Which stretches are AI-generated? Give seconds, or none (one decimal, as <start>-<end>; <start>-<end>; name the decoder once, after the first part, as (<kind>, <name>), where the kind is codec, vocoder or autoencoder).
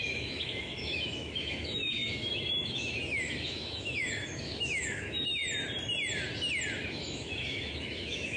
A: 0.0-5.4 (autoencoder, DAC-VAE); 6.9-8.4